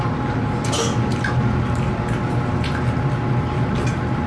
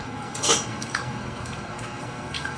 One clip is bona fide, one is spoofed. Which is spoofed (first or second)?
second